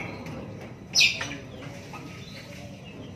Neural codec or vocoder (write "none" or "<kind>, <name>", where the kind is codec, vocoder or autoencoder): none